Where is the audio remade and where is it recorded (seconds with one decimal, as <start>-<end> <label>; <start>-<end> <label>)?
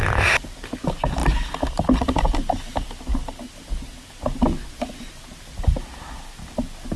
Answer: 0.0-4.5 recorded; 4.5-5.2 remade; 5.2-7.0 recorded